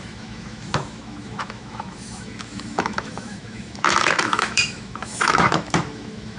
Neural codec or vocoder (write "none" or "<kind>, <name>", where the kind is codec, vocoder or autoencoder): autoencoder, DAC-VAE